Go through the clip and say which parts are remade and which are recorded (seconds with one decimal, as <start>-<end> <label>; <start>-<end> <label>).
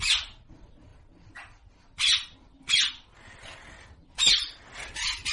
0.0-5.3 recorded